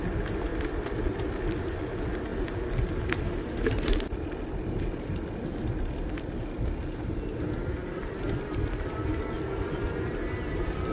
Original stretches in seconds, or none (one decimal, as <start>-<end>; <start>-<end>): 0.0-0.5; 1.0-7.8; 9.1-10.9